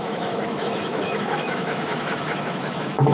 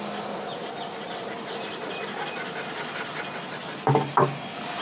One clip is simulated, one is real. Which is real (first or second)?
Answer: second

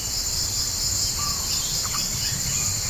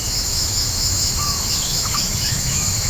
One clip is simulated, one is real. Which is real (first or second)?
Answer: first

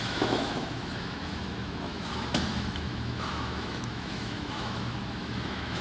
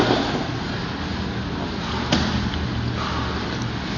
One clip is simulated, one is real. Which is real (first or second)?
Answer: second